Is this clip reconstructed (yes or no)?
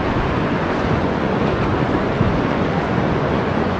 yes